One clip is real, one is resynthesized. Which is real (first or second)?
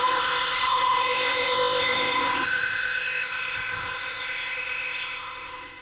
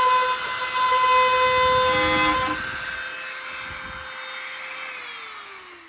second